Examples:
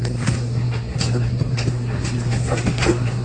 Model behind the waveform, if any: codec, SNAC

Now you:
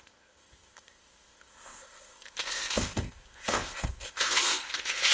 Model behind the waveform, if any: codec, ZipCodec